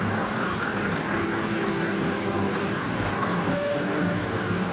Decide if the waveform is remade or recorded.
remade